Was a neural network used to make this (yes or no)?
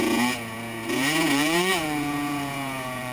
yes